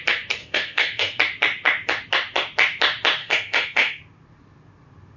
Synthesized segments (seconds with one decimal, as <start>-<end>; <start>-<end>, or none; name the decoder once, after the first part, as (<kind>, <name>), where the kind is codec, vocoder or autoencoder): 0.4-1.2 (codec, SNAC); 3.2-4.0